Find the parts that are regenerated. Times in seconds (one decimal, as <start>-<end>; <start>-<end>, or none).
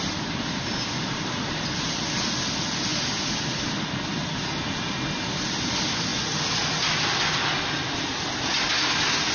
none